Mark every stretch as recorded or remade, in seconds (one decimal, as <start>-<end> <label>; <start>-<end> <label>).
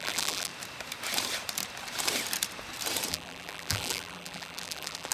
0.0-0.5 remade; 0.5-3.1 recorded; 3.1-5.1 remade